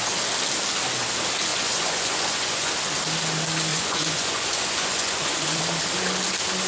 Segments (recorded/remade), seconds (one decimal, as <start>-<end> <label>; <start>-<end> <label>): 0.0-1.5 recorded; 1.5-2.7 remade; 2.7-3.7 recorded; 3.7-5.6 remade; 5.6-6.7 recorded